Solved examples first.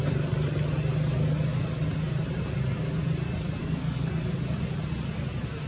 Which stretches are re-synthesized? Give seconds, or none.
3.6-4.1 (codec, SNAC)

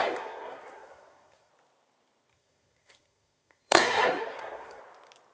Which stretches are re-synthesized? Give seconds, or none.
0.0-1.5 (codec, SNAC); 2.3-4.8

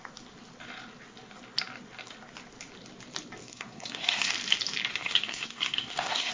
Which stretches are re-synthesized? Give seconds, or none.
3.4-4.3 (codec, SNAC); 4.9-6.3

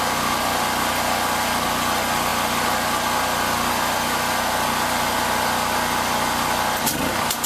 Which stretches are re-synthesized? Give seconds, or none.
none

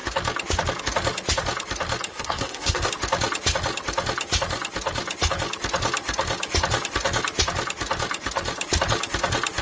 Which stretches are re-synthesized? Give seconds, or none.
2.1-2.9 (codec, SNAC)

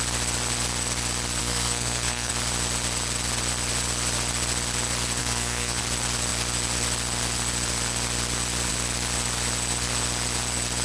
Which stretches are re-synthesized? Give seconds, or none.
1.4-2.3 (codec, SNAC); 5.2-5.8

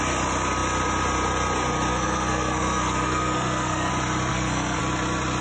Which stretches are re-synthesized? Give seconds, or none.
1.9-3.9 (codec, SNAC); 4.3-4.8

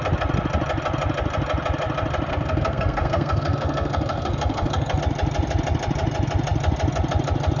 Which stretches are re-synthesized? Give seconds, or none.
2.3-5.0 (codec, SNAC)